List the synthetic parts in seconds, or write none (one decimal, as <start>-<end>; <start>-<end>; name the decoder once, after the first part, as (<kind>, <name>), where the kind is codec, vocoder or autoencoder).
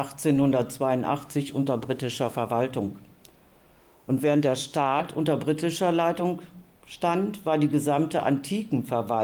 1.2-2.5 (autoencoder, DAC-VAE); 3.8-5.0